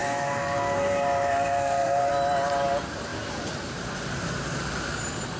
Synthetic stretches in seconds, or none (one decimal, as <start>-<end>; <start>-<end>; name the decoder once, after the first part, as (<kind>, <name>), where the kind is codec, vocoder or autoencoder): 0.0-2.1 (codec, SNAC)